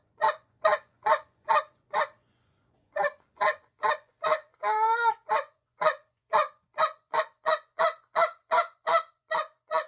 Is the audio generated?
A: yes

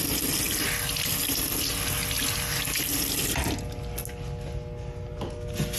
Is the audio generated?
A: no